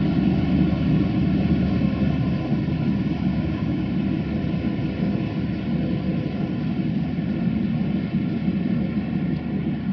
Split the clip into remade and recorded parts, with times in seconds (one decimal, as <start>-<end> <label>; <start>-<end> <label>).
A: 0.0-3.3 recorded; 3.3-3.9 remade; 3.9-9.9 recorded